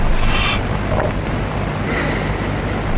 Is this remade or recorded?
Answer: recorded